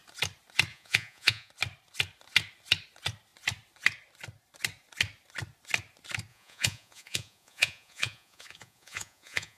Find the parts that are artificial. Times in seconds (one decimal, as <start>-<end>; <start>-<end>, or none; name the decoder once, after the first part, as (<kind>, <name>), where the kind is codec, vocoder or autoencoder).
0.7-1.5 (vocoder, Vocos); 6.3-9.6